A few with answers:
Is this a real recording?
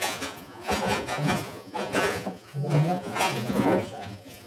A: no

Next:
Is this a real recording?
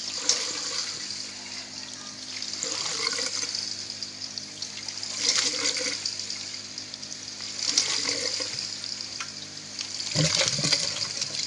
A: yes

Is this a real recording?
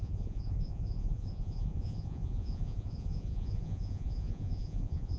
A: no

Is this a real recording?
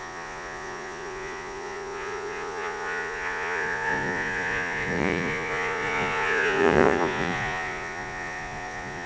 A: no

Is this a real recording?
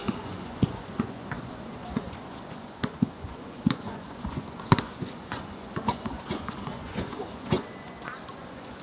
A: no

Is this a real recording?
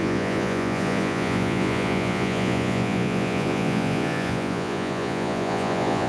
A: no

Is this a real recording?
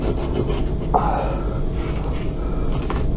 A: yes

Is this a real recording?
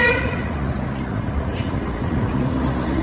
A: no